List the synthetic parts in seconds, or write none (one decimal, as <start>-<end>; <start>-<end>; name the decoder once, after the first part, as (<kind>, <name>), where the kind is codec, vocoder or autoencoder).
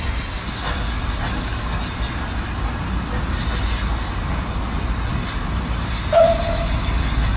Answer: none